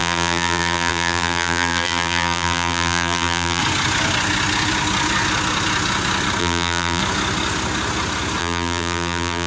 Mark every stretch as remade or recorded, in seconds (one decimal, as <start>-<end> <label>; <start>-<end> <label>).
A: 0.0-3.6 remade; 3.6-6.4 recorded; 6.4-7.0 remade; 7.0-8.4 recorded; 8.4-9.5 remade